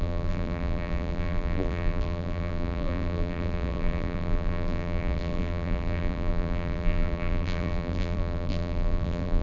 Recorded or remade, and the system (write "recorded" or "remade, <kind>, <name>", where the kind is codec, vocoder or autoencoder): remade, vocoder, BigVGAN v2